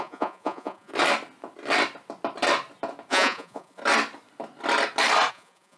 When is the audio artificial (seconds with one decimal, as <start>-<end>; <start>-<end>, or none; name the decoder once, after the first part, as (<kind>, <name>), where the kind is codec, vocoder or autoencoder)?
0.0-0.9 (vocoder, Vocos); 3.1-3.8; 5.3-5.8